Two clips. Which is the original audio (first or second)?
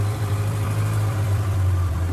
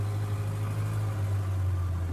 second